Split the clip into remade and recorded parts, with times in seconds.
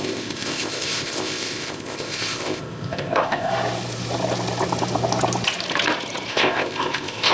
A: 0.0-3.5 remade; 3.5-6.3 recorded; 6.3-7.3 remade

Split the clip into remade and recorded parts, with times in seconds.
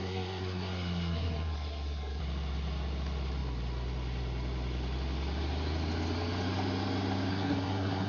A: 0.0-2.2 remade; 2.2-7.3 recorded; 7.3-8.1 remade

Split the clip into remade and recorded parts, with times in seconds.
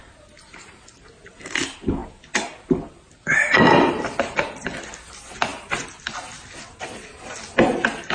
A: 0.0-2.0 recorded; 2.0-3.9 remade; 3.9-8.1 recorded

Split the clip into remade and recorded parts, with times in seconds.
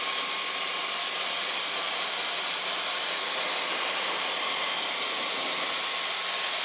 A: 0.0-0.8 recorded; 0.8-4.8 remade; 4.8-6.6 recorded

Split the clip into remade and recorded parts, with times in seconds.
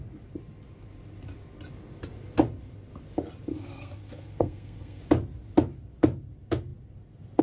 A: 0.0-3.5 recorded; 3.5-5.0 remade; 5.0-7.4 recorded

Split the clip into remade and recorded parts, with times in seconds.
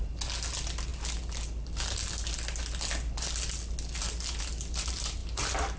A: 0.0-5.8 recorded